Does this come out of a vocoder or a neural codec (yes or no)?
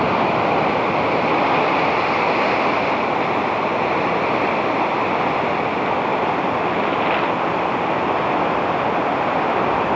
yes